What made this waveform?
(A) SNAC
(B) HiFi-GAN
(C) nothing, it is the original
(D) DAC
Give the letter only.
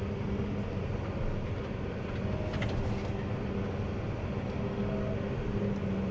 C